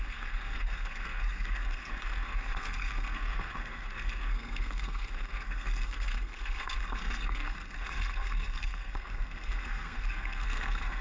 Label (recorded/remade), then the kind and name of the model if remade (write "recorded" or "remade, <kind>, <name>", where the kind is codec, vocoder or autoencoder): remade, codec, SNAC